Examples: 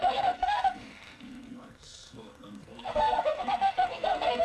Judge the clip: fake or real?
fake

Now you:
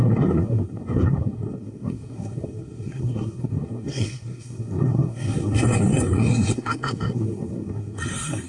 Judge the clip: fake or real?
fake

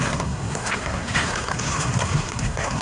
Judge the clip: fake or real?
fake